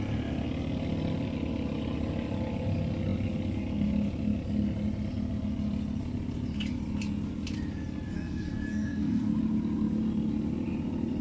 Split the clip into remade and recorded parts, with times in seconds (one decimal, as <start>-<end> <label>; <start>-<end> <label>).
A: 0.0-8.1 recorded; 8.1-9.4 remade; 9.4-11.2 recorded